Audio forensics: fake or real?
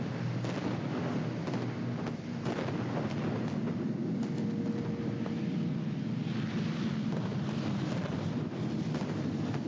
real